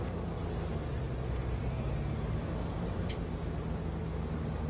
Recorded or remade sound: recorded